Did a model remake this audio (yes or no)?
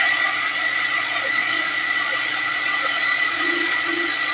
yes